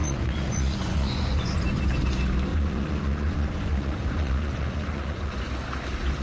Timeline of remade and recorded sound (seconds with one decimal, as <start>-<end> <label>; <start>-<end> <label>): 0.0-1.6 remade; 1.6-2.5 recorded; 2.5-5.4 remade; 5.4-6.2 recorded